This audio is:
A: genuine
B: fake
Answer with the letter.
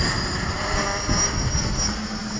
A